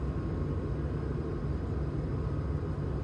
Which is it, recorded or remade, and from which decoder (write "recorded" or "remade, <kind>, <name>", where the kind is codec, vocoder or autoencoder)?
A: recorded